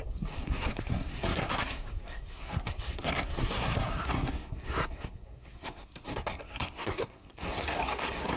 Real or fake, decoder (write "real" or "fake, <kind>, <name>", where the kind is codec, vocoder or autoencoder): fake, codec, SNAC